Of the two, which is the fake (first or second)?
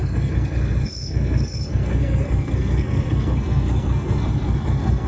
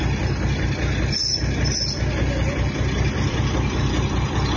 first